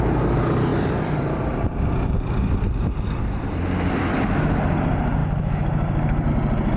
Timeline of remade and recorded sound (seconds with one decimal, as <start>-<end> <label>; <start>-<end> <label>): 0.0-0.7 recorded; 0.7-4.0 remade; 4.0-5.2 recorded; 5.2-6.3 remade; 6.3-6.8 recorded